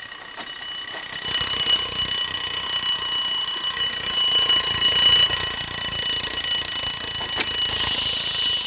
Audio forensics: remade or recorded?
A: recorded